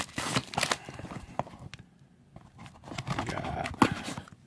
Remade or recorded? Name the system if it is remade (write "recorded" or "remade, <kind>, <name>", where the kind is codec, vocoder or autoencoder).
recorded